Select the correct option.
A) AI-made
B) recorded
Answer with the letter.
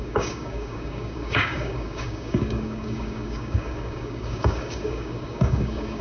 A